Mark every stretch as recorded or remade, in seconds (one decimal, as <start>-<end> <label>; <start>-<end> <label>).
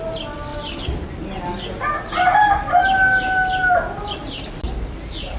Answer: 0.0-5.4 recorded